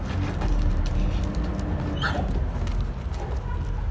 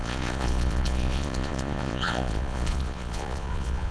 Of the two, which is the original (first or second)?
first